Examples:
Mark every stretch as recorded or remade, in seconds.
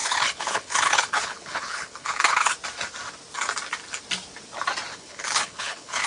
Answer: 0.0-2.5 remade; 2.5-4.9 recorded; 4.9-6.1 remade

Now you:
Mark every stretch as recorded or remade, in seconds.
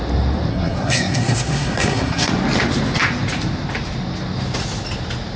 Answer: 0.0-0.5 recorded; 0.5-2.3 remade; 2.3-5.4 recorded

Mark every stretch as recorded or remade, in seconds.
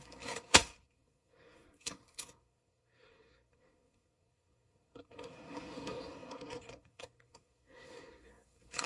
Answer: 0.0-8.9 remade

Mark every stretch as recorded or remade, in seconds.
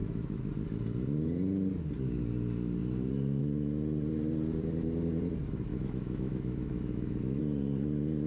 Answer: 0.0-0.5 remade; 0.5-5.7 recorded; 5.7-7.4 remade; 7.4-8.3 recorded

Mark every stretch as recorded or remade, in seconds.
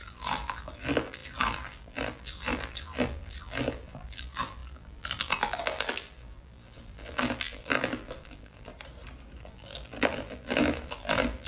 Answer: 0.0-8.7 remade; 8.7-9.4 recorded; 9.4-11.5 remade